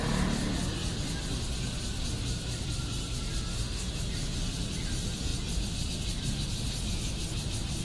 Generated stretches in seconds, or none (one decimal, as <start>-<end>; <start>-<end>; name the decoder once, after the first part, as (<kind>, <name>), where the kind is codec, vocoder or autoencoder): 3.5-4.0 (autoencoder, DAC-VAE)